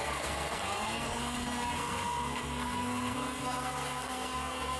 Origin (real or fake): fake